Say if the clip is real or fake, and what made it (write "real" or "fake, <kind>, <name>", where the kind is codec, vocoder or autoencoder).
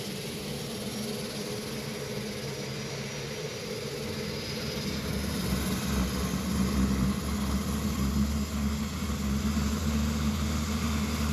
real